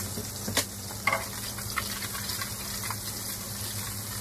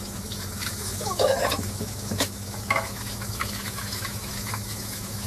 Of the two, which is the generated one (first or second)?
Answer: second